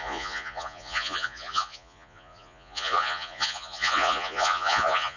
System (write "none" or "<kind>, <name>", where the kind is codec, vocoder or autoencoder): vocoder, Vocos